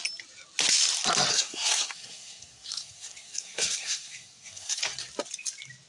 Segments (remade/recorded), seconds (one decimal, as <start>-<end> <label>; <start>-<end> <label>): 0.0-1.3 recorded; 1.3-4.8 remade; 4.8-5.9 recorded